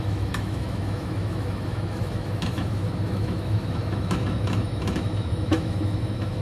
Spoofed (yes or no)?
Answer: yes